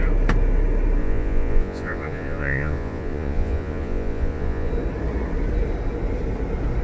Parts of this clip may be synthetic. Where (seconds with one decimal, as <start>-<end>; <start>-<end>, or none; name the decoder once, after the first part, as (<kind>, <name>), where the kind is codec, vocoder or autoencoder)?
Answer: 1.0-4.7 (vocoder, Vocos)